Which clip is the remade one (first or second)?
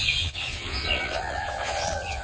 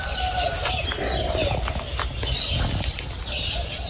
first